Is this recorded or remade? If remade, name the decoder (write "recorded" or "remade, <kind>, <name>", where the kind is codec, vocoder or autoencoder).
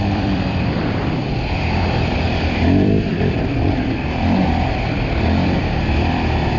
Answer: remade, vocoder, BigVGAN v2